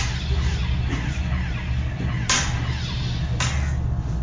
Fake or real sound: real